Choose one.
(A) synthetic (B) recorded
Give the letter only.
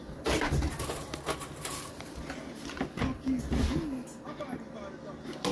B